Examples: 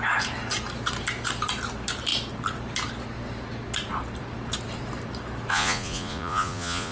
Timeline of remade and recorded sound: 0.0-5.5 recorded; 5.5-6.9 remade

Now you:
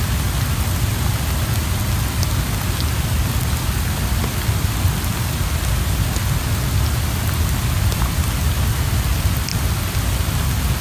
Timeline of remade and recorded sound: 0.0-10.8 recorded

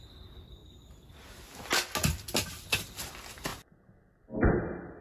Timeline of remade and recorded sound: 0.0-5.0 recorded

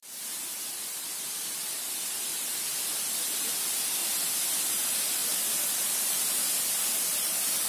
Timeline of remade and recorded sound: 0.0-7.7 recorded

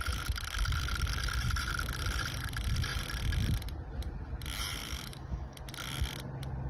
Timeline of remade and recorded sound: 0.0-4.8 recorded; 4.8-5.6 remade; 5.6-6.7 recorded